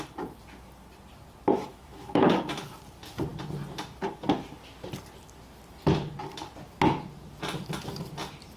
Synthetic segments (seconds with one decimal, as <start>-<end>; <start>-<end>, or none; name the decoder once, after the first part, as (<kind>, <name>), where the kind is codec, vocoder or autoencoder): 1.7-2.4 (autoencoder, DAC-VAE)